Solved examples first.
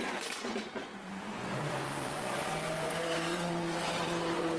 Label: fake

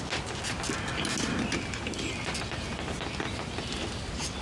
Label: real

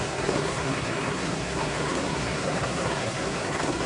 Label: fake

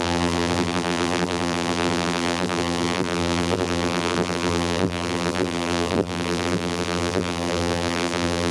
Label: fake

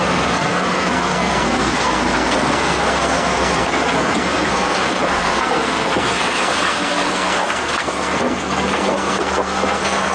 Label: fake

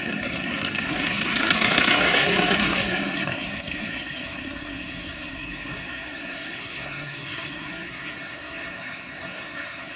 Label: fake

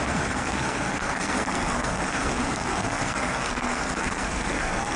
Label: fake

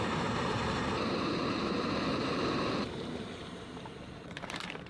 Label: fake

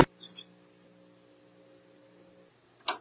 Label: real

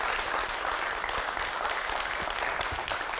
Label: real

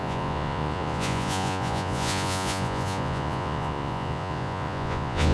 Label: fake